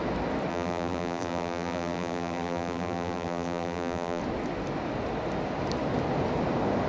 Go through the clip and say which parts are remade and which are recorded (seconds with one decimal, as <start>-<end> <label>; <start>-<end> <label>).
0.0-0.5 recorded; 0.5-4.2 remade; 4.2-6.9 recorded